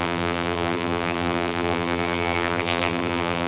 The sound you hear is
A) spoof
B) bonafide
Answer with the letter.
A